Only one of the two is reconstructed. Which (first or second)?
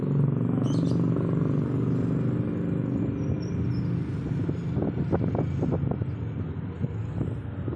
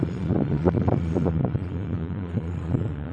second